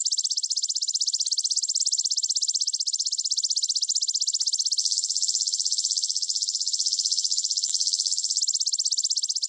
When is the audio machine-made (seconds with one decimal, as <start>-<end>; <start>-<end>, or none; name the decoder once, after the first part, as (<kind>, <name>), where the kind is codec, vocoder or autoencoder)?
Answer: 4.8-8.4 (vocoder, BigVGAN v2)